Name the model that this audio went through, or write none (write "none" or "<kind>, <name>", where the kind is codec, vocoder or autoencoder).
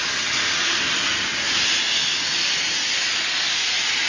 none